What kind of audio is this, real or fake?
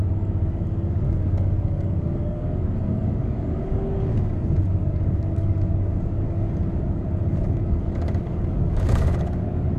fake